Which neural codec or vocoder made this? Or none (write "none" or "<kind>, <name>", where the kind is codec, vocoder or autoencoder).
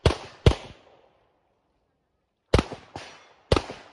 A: none